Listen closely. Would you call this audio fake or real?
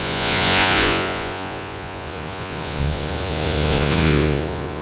fake